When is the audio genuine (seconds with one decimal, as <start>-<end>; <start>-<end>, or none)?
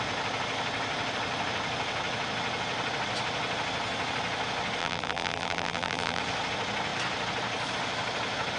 0.0-4.8; 6.2-8.6